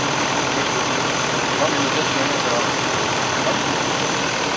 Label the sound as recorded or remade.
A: recorded